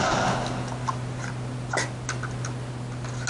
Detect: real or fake real